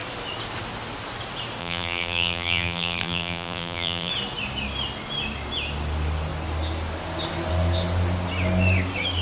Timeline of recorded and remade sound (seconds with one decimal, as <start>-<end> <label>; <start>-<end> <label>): 0.0-1.6 recorded; 1.6-4.1 remade; 4.1-9.2 recorded